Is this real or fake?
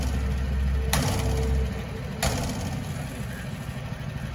real